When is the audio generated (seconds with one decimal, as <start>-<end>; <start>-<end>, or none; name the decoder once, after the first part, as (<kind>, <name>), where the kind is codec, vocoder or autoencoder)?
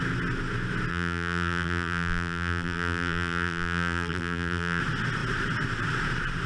0.9-4.8 (vocoder, BigVGAN v2)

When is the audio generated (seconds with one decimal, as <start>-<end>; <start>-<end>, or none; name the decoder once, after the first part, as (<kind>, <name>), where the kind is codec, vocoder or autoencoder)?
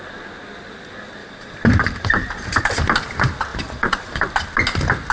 1.2-2.6 (vocoder, BigVGAN v2); 3.5-4.4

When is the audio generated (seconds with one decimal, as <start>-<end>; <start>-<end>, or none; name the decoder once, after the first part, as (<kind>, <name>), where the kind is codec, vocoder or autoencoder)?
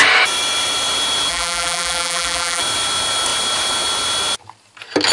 1.3-2.6 (vocoder, BigVGAN v2)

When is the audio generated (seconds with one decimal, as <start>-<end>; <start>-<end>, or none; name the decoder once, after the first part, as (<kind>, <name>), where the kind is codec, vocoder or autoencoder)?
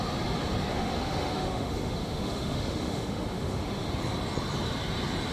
0.7-3.9 (autoencoder, DAC-VAE)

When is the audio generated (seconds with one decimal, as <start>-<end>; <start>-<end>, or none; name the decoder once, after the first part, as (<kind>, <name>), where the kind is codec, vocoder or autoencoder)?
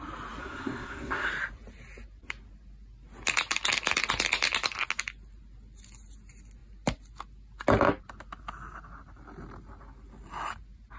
0.4-1.3 (codec, SNAC)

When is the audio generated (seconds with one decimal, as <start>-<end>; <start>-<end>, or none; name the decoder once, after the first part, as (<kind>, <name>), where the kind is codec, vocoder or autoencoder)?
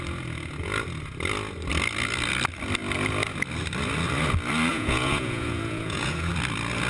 4.7-6.3 (vocoder, Vocos)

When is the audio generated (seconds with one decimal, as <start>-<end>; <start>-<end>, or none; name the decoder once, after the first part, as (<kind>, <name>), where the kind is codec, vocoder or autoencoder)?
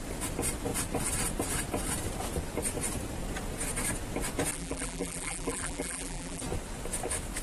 4.5-6.4 (vocoder, BigVGAN v2)